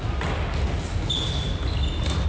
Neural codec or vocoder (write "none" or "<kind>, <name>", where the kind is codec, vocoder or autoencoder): none